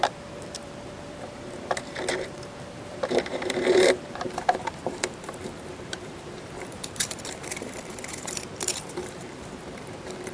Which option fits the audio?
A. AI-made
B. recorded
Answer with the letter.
A